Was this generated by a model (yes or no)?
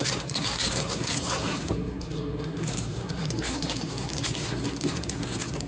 yes